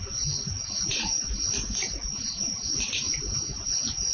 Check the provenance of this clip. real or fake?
real